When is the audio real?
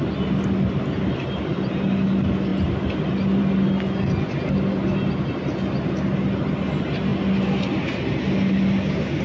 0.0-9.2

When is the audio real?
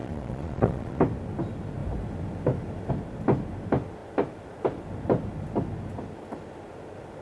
1.0-7.2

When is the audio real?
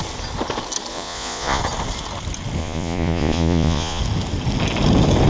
0.0-0.9; 1.6-2.6; 4.0-5.3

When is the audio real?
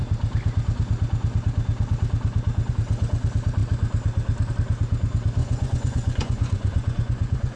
0.0-5.4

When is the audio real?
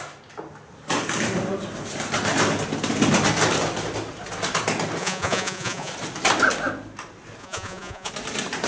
0.0-5.0; 5.9-7.4; 8.1-8.7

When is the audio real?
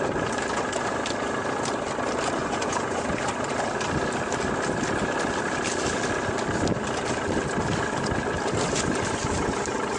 0.0-2.4; 3.0-10.0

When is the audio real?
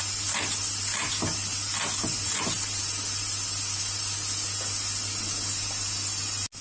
0.0-6.6